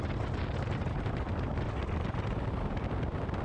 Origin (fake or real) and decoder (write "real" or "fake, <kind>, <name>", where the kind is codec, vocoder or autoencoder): real